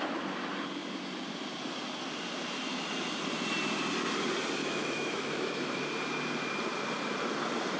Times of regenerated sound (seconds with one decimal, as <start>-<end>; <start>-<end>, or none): 4.6-5.8